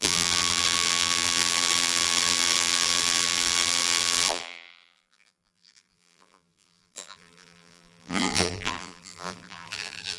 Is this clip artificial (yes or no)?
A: yes